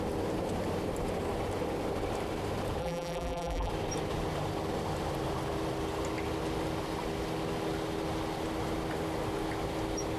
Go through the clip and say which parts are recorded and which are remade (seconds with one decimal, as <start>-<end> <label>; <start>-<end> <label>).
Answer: 0.0-2.8 recorded; 2.8-3.7 remade; 3.7-10.2 recorded